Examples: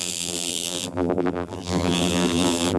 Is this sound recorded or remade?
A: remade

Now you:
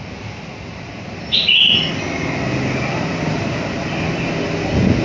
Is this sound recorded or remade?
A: recorded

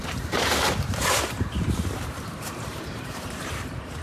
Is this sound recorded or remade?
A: remade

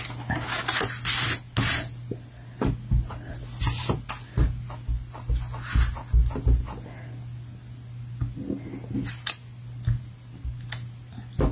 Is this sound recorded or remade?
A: recorded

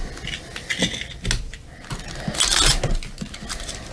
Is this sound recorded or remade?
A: recorded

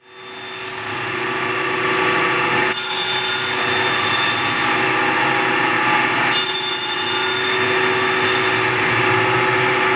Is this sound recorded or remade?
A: recorded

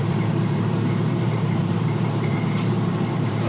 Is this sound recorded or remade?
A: remade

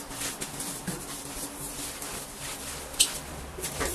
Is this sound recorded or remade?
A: remade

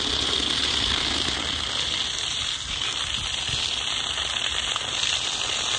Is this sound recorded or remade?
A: recorded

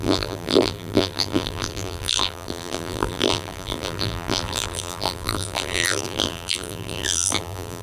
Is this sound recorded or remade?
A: remade